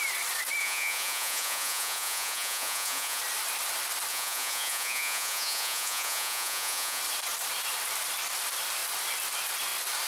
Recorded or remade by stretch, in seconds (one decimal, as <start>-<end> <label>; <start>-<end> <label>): 0.0-0.6 recorded; 0.6-3.2 remade; 3.2-4.1 recorded; 4.1-7.0 remade; 7.0-10.1 recorded